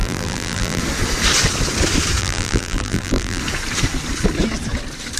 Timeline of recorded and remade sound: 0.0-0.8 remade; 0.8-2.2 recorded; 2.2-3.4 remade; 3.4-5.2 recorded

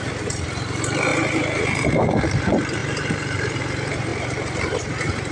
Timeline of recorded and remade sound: 0.0-5.3 remade

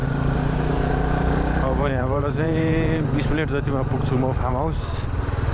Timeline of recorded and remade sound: 0.0-3.2 remade; 3.2-5.5 recorded